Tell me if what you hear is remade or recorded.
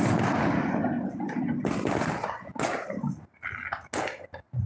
recorded